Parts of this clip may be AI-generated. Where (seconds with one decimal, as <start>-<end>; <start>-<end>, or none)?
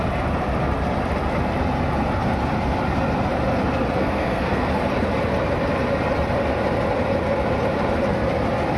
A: 4.0-4.7